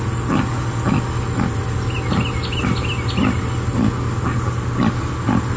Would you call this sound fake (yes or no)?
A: no